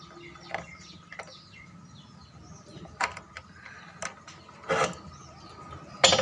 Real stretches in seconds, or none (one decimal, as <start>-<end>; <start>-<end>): 0.0-6.2